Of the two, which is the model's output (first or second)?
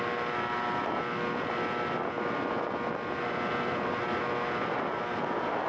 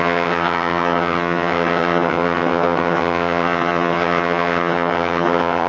second